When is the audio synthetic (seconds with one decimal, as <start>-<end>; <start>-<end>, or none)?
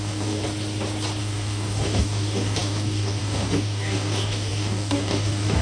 0.0-0.4; 1.2-5.6